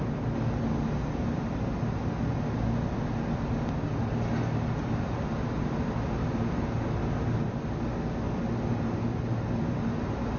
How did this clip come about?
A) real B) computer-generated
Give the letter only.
A